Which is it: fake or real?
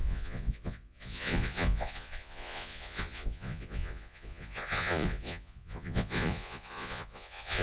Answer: fake